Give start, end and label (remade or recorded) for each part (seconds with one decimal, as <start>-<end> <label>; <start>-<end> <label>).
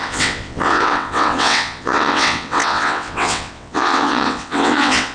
0.0-5.1 remade